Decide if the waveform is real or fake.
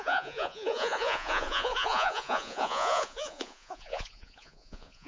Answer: fake